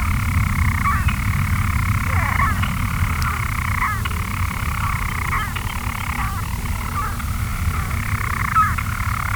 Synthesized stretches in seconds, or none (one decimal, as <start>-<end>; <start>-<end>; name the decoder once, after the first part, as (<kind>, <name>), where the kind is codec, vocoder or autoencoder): 4.3-4.9 (vocoder, BigVGAN v2)